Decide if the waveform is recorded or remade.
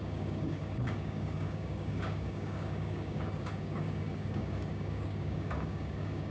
remade